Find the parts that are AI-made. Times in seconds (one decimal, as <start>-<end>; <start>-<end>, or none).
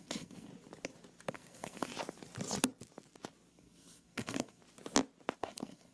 0.0-0.5; 1.3-1.9; 3.5-4.6; 5.4-5.9